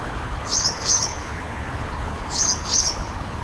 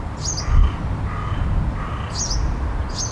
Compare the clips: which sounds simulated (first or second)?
first